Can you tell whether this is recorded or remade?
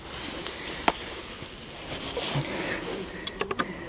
recorded